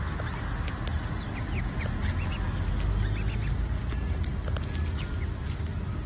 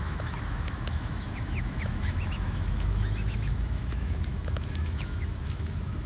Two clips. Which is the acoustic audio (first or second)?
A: first